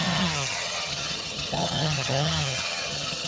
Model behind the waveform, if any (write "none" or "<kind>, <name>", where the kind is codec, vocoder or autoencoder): vocoder, HiFi-GAN